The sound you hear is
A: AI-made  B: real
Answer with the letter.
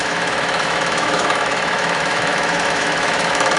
A